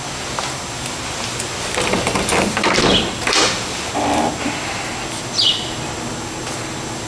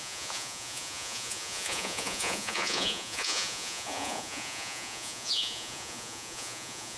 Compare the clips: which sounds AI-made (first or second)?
second